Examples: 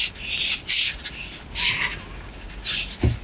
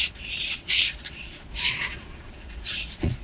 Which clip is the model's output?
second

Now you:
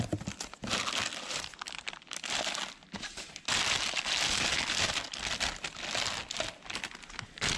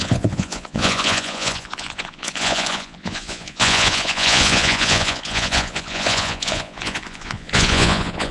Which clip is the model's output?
second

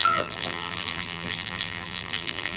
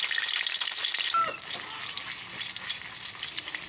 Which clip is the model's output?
first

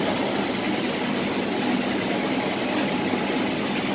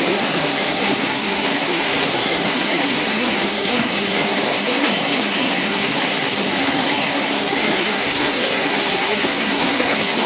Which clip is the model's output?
second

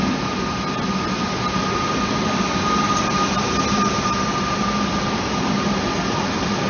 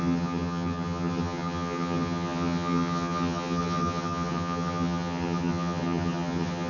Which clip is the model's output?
second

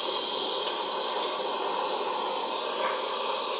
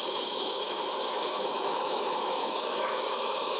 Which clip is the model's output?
second